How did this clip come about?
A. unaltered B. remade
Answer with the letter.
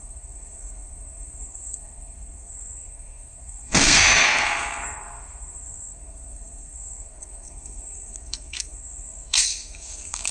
B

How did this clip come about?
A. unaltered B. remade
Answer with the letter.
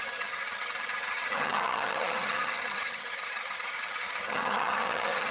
B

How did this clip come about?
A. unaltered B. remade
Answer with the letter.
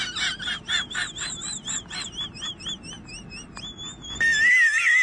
A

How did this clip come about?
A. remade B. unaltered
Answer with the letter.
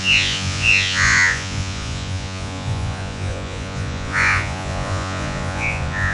A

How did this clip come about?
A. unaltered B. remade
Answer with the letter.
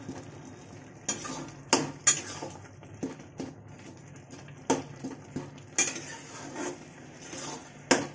A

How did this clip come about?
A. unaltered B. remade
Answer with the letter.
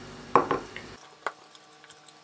A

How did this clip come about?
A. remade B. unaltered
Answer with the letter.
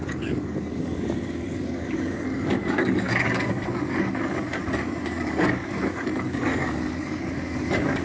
A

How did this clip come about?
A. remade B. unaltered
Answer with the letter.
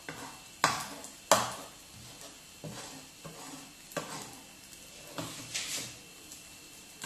B